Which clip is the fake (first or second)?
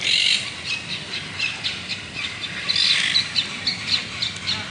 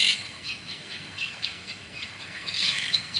second